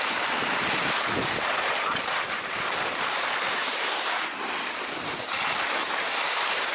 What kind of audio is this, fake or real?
real